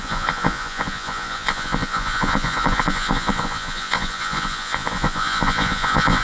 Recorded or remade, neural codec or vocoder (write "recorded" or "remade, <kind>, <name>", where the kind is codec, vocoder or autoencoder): remade, vocoder, Vocos